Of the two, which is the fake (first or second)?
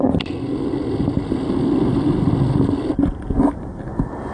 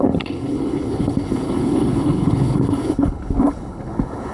second